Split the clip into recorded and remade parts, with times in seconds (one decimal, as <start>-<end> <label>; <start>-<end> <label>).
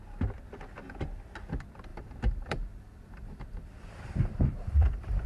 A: 0.0-1.9 recorded; 1.9-5.3 remade